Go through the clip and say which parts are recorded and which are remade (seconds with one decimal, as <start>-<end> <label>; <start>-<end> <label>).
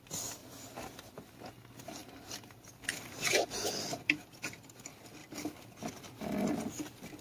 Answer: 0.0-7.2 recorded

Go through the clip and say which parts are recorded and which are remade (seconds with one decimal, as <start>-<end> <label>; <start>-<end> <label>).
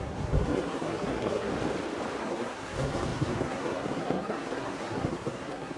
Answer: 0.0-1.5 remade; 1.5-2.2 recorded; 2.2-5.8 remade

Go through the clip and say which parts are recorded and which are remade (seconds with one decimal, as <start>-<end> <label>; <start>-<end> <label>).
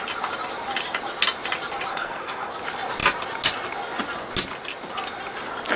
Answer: 0.0-1.9 recorded; 1.9-2.5 remade; 2.5-5.8 recorded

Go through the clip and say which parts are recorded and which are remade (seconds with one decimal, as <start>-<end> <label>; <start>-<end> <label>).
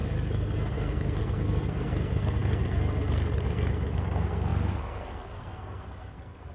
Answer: 0.0-6.5 remade